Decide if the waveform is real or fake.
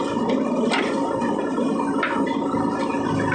real